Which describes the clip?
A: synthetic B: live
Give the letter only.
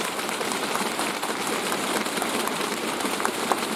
B